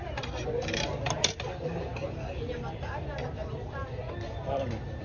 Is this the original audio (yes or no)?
yes